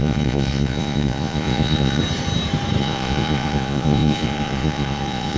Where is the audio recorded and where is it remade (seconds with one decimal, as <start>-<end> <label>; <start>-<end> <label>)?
0.0-2.0 remade; 2.0-2.8 recorded; 2.8-5.4 remade